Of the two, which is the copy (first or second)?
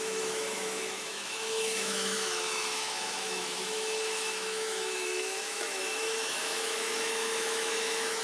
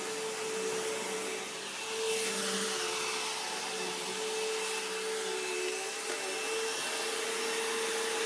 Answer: first